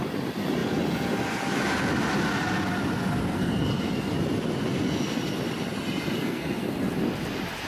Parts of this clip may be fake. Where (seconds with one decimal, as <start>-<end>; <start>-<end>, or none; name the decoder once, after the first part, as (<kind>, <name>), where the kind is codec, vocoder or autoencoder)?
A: 3.3-4.1 (codec, SNAC); 6.2-6.9